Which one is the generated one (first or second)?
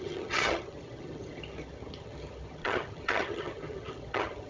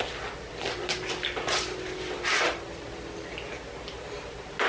first